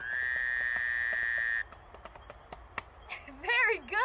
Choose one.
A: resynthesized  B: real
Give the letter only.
B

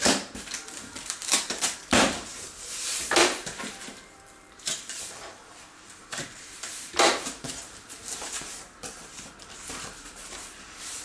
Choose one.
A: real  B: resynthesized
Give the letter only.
B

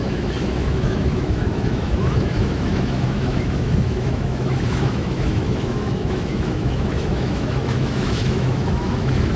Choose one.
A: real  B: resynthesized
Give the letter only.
B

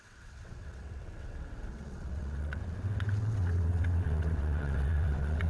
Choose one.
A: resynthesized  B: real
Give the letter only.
A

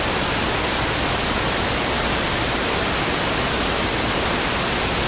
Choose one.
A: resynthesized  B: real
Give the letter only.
B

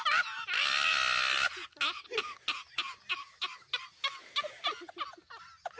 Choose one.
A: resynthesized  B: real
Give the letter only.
B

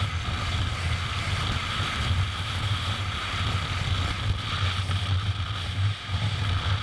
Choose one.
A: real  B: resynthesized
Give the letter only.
A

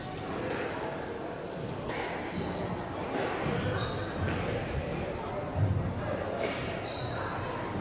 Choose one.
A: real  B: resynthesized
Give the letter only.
A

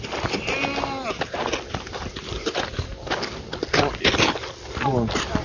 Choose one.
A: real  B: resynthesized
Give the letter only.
A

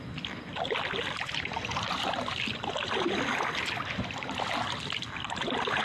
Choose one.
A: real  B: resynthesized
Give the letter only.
A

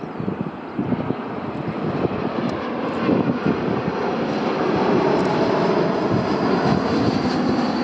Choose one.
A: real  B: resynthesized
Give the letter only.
A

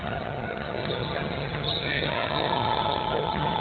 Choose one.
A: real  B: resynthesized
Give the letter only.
B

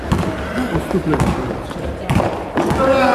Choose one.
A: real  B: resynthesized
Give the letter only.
A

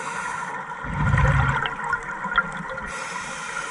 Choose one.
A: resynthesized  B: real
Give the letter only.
B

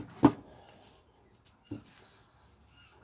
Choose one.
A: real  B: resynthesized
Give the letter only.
A